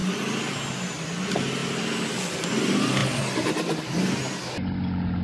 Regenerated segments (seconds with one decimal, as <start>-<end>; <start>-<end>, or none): none